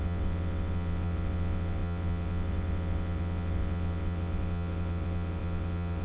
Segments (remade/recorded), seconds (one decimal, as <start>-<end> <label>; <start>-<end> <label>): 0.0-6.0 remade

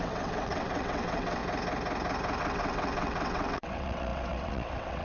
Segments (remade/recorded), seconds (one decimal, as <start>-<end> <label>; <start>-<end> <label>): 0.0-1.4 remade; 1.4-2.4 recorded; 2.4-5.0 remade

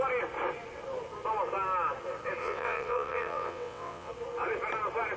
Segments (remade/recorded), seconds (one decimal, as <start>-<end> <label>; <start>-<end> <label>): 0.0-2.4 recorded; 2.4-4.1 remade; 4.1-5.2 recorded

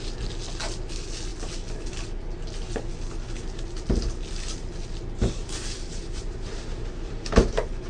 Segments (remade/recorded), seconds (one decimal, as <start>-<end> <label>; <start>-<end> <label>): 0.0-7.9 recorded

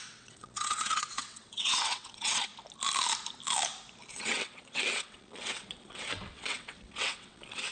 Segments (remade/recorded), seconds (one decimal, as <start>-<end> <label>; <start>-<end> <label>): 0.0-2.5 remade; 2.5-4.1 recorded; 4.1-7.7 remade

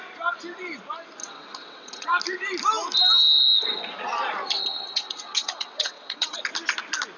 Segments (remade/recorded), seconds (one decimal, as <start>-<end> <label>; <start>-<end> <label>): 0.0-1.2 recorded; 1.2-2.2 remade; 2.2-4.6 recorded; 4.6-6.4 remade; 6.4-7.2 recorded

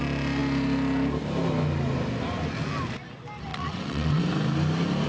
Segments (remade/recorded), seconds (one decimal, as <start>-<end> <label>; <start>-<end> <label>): 0.0-3.5 recorded; 3.5-4.2 remade; 4.2-5.1 recorded